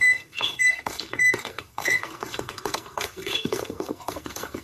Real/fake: fake